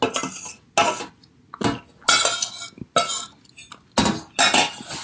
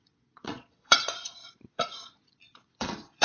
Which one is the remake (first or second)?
second